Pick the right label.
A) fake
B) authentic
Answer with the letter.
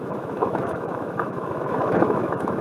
A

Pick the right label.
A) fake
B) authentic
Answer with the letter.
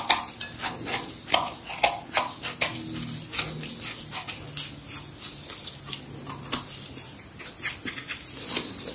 B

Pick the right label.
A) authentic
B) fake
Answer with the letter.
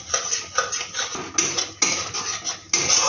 A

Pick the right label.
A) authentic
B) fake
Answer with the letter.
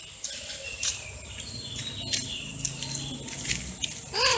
A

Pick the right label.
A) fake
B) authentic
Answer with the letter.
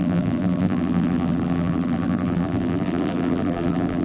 A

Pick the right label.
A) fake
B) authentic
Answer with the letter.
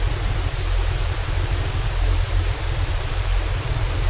A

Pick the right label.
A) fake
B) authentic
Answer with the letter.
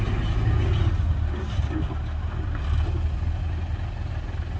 B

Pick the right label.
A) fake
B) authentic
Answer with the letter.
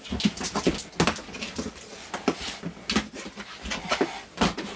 B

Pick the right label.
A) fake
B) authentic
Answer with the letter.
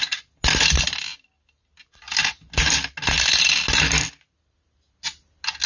B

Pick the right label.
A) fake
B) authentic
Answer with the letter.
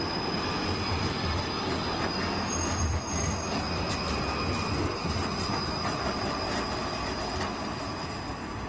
B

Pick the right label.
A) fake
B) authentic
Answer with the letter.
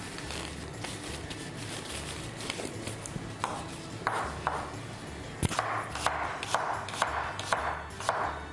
B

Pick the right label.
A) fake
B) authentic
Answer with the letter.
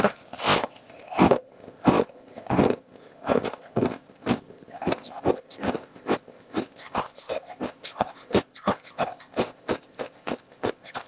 A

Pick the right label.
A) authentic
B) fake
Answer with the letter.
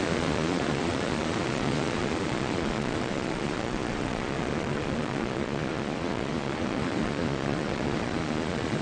B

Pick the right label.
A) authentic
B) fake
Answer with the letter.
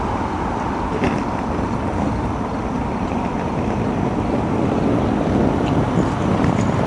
B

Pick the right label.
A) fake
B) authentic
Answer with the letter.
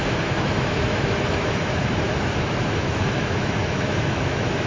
A